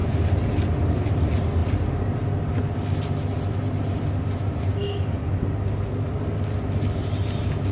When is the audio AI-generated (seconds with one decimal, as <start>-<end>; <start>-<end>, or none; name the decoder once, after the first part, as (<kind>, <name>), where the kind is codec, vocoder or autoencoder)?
4.8-5.4 (codec, DAC)